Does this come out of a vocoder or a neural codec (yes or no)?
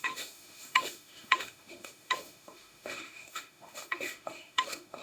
yes